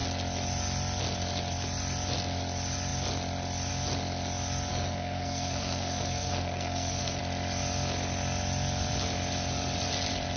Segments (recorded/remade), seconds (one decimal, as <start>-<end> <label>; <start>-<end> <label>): 0.0-4.7 recorded; 4.7-7.2 remade; 7.2-10.4 recorded